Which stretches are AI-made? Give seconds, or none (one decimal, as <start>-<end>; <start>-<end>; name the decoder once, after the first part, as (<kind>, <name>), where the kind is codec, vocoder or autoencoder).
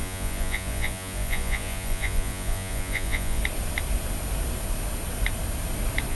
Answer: 0.0-3.4 (vocoder, Vocos)